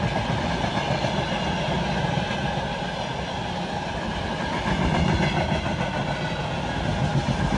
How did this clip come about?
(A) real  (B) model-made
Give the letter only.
A